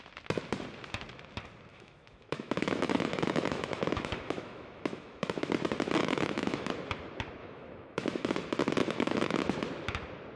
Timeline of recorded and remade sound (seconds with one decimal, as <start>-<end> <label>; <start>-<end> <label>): 0.0-1.7 recorded; 1.7-5.5 remade; 5.5-6.0 recorded; 6.0-6.7 remade; 6.7-7.4 recorded; 7.4-8.3 remade; 8.3-8.8 recorded; 8.8-9.4 remade; 9.4-10.4 recorded

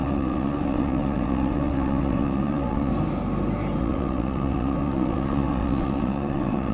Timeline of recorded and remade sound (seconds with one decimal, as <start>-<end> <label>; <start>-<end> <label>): 0.0-2.9 remade; 2.9-3.8 recorded; 3.8-6.7 remade

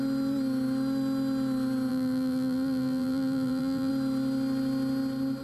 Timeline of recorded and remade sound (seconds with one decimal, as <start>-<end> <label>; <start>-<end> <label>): 0.0-1.9 recorded; 1.9-3.9 remade; 3.9-5.4 recorded

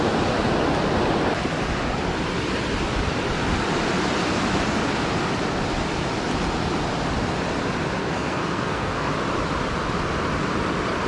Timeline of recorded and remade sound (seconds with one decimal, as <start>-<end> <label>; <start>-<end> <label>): 0.0-8.0 recorded; 8.0-9.1 remade; 9.1-11.1 recorded

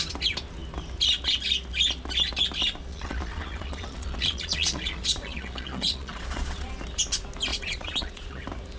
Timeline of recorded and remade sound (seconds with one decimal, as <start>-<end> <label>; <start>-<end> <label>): 0.0-2.9 recorded; 2.9-6.7 remade; 6.7-7.5 recorded; 7.5-8.4 remade; 8.4-8.8 recorded